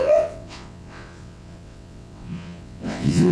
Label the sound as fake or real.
fake